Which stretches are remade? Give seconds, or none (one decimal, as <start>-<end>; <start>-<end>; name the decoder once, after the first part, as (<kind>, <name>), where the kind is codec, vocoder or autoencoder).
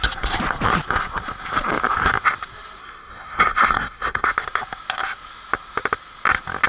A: 2.8-4.3 (codec, SNAC)